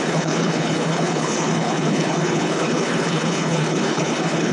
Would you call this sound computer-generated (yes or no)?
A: yes